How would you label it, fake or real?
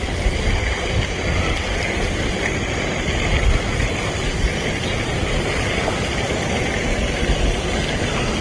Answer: real